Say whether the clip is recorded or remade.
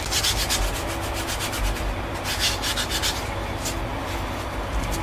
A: recorded